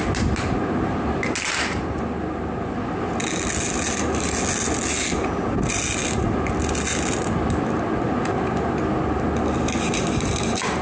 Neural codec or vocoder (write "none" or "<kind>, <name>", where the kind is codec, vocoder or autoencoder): none